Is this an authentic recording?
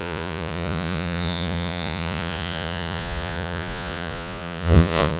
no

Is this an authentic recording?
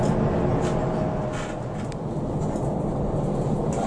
yes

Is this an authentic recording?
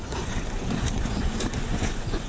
no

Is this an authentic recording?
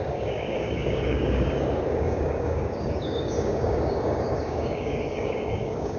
no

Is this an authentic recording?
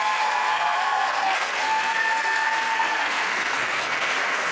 no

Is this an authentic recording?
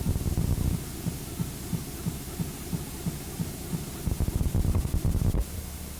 yes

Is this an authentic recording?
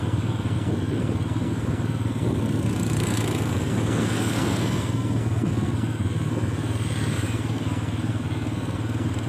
no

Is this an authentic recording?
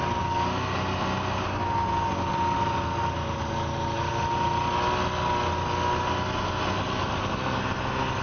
yes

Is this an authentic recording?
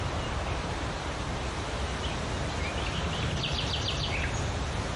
yes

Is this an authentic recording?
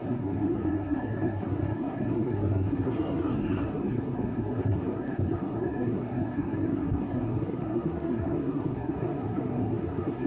no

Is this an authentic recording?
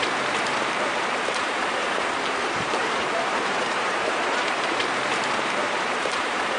no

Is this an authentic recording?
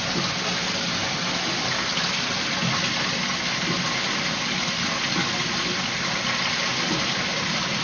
yes